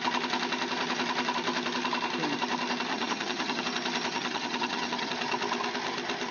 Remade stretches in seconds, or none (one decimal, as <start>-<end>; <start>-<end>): 2.9-3.6; 4.1-5.1